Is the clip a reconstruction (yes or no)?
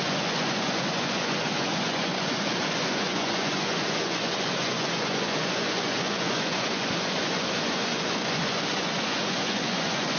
yes